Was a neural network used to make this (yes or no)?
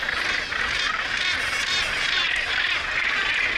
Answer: no